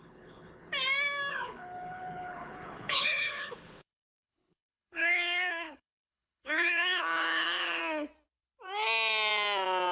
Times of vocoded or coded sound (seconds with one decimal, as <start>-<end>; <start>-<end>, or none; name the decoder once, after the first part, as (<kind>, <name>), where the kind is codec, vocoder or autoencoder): 0.0-0.7 (codec, HILCodec); 1.3-7.8